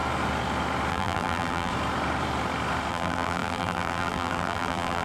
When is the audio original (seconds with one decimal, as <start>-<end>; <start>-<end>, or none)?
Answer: 0.0-0.9; 1.7-2.9